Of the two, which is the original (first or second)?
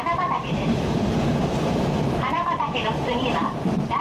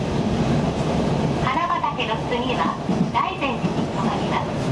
second